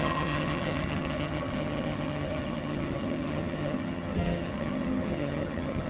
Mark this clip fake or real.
fake